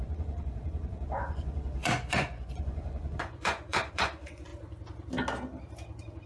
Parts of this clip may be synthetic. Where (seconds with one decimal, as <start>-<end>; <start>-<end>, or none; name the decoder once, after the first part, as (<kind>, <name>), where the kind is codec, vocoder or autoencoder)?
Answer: 0.0-4.5 (vocoder, Vocos)